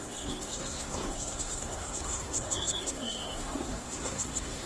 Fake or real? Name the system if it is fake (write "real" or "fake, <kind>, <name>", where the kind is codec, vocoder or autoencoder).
fake, codec, SNAC